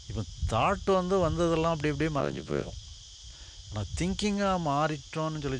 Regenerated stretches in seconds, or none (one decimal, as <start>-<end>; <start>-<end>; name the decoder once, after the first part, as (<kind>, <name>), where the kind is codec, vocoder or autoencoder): 2.2-2.7 (vocoder, Vocos)